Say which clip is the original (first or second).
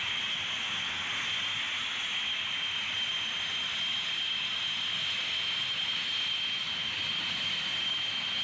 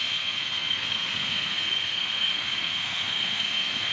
first